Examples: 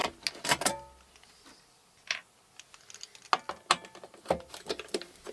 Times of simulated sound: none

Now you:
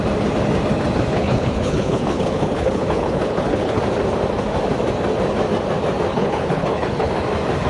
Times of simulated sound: 1.1-3.8; 6.1-7.1

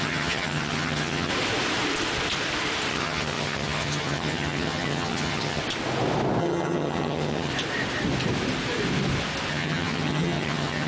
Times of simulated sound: 0.0-1.3; 2.9-5.6; 6.4-7.5; 9.5-10.9

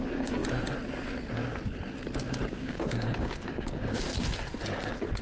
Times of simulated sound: 0.0-0.4; 2.5-4.1

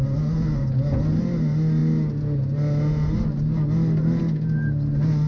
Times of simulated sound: none

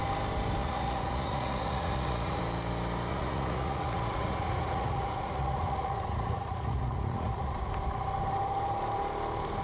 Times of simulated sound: 0.6-2.4; 3.1-7.7

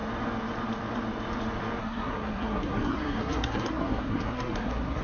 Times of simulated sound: 1.8-5.0

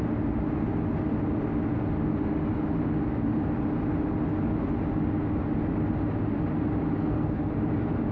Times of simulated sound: 7.0-7.5